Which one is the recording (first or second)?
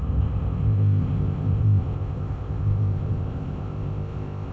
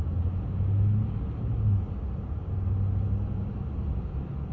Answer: second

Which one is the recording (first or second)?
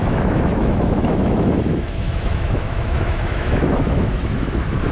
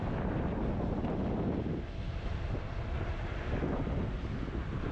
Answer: second